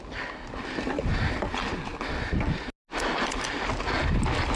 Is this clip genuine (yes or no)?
yes